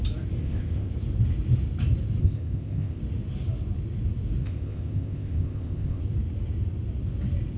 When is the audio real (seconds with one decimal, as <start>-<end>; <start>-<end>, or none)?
0.0-0.4; 0.9-2.2; 3.0-4.4; 6.0-7.6